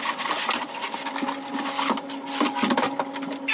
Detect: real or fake real